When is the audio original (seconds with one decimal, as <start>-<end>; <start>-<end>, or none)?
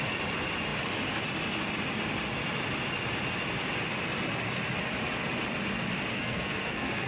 0.0-6.1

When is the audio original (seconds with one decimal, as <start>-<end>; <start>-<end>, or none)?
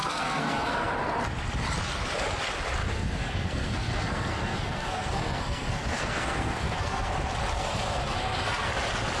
0.9-2.8; 7.1-7.5; 8.7-9.2